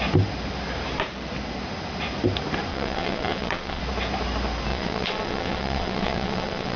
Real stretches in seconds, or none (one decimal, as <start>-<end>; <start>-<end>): 0.0-2.7; 3.8-4.7